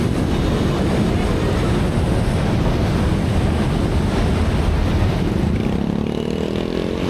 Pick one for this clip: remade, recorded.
recorded